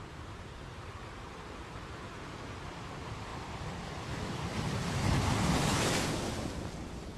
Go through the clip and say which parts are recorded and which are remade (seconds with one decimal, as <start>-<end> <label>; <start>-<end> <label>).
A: 0.0-3.3 recorded; 3.3-7.2 remade